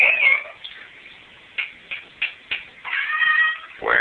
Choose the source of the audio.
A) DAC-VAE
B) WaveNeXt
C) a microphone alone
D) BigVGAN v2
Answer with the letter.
C